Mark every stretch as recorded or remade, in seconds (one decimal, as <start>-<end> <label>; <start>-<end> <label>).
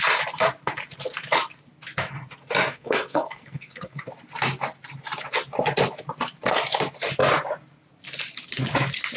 0.0-2.7 recorded; 2.7-4.1 remade; 4.1-9.2 recorded